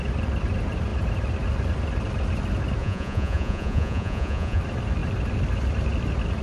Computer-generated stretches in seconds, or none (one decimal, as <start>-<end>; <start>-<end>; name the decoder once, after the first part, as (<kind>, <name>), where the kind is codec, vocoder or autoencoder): 2.8-4.6 (vocoder, Vocos)